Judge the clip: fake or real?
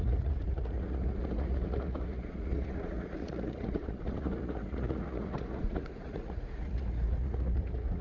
fake